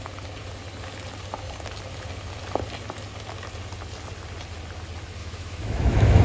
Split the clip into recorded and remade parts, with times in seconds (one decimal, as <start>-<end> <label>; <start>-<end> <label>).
0.0-5.2 recorded; 5.2-6.2 remade